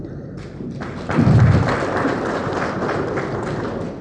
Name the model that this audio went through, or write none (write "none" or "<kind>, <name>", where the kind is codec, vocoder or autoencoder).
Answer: vocoder, BigVGAN v2